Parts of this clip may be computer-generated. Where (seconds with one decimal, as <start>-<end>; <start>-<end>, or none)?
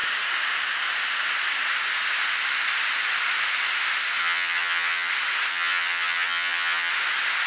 4.2-5.1; 5.5-6.9